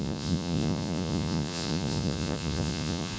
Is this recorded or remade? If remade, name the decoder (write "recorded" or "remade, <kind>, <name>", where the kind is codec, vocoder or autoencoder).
remade, vocoder, Vocos